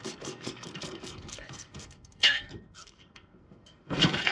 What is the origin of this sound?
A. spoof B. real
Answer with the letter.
A